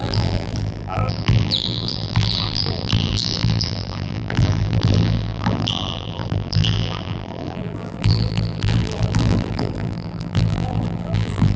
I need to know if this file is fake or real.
fake